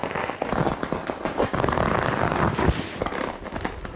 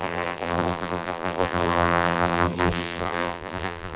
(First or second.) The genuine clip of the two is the first